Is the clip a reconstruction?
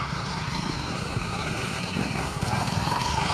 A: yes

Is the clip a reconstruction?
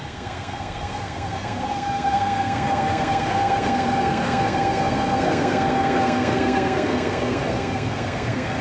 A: yes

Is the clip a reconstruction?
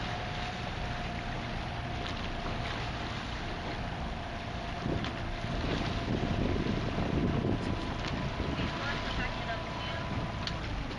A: no